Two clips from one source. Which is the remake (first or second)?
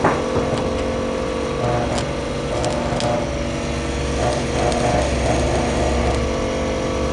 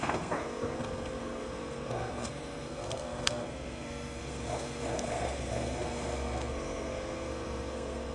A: second